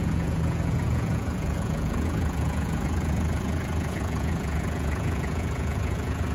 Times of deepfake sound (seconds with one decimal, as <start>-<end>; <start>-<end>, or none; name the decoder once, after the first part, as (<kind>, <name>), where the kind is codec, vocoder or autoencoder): 0.0-6.3 (vocoder, Vocos)

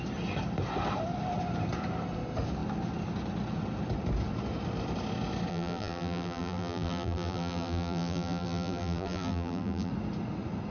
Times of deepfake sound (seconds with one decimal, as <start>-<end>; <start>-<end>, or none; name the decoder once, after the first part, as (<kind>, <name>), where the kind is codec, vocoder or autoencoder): 5.5-9.9 (vocoder, BigVGAN v2)

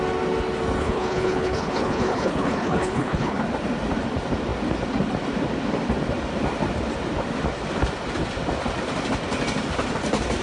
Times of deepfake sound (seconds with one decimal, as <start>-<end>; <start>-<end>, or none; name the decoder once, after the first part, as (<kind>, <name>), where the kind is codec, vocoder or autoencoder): 0.8-3.4 (codec, HILCodec)

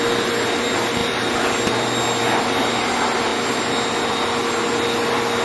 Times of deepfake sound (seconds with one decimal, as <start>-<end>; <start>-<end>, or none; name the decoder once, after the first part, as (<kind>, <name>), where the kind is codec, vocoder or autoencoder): none